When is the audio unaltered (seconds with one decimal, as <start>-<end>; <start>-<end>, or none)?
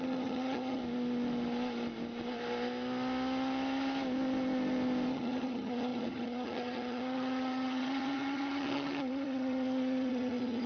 0.8-5.1